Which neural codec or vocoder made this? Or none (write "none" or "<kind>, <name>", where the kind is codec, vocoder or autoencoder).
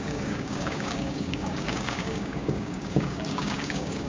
codec, DAC